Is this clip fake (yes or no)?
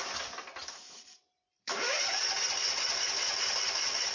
no